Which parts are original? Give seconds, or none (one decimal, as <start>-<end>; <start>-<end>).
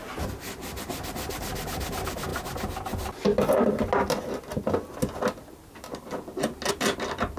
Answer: 0.0-7.4